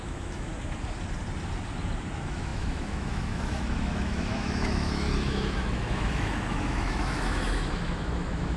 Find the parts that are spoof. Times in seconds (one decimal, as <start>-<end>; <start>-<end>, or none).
0.0-0.5; 2.1-8.6